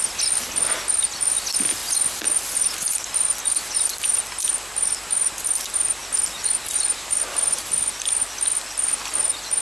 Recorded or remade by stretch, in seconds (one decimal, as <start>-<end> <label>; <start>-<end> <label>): 0.0-9.6 recorded